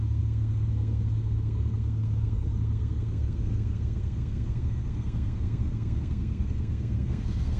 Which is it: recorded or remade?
remade